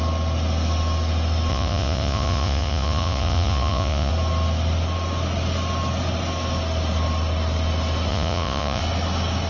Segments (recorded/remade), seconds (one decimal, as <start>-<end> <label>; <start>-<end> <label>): 0.0-1.5 recorded; 1.5-4.1 remade; 4.1-8.1 recorded; 8.1-8.8 remade; 8.8-9.5 recorded